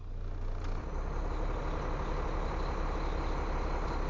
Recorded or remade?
recorded